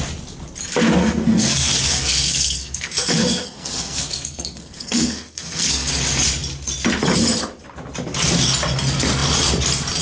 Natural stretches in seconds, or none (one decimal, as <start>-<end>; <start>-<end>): 0.0-1.0; 5.9-10.0